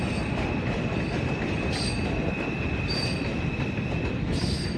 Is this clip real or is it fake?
real